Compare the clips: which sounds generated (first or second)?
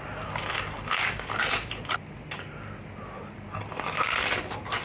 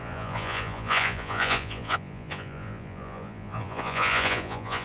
second